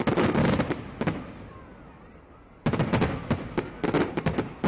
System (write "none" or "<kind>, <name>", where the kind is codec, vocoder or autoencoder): none